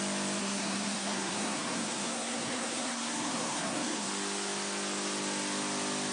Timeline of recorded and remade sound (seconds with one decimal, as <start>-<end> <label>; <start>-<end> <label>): 0.0-0.4 recorded; 0.4-4.1 remade; 4.1-6.1 recorded